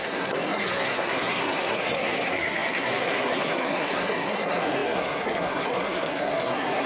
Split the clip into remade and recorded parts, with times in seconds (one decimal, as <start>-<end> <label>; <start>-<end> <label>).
0.0-6.9 remade